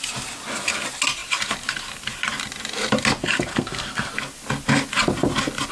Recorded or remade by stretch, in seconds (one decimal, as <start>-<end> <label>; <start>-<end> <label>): 0.0-3.5 recorded; 3.5-4.1 remade; 4.1-5.7 recorded